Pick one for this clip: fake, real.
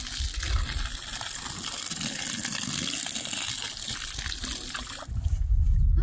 real